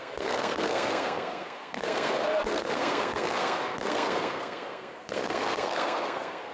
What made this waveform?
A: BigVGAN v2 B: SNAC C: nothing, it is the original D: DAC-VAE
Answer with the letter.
B